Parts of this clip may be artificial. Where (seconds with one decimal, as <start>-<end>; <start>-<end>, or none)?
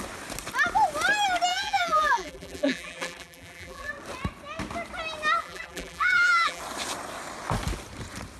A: 1.5-3.9; 5.4-6.6